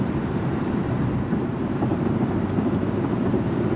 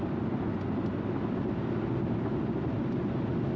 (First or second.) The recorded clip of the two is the second